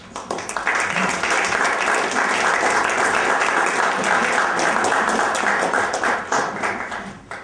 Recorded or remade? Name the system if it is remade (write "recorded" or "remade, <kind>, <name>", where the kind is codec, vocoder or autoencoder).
recorded